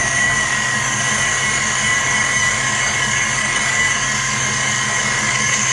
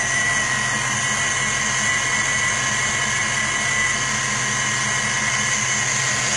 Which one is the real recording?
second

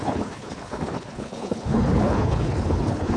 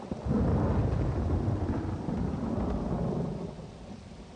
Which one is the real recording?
second